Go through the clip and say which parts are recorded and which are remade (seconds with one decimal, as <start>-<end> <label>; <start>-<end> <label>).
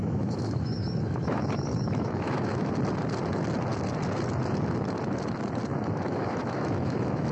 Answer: 0.0-2.7 remade; 2.7-5.7 recorded; 5.7-7.3 remade